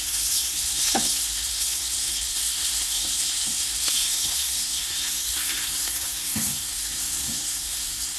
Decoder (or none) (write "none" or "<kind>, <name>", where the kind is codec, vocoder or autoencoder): codec, SNAC